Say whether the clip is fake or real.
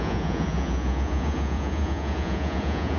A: fake